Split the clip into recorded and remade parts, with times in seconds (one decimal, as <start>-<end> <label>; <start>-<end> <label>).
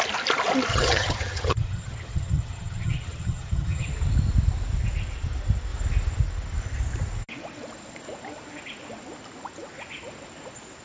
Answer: 0.0-0.7 recorded; 0.7-3.9 remade; 3.9-10.8 recorded